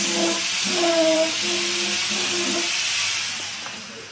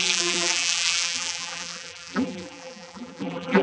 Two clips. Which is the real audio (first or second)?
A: first